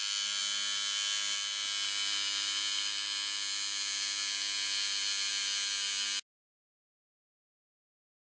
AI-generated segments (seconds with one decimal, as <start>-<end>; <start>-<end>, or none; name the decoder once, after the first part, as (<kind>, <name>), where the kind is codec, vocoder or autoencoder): none